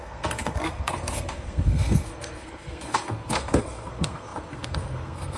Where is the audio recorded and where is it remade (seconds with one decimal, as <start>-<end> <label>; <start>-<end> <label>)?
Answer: 0.0-5.4 remade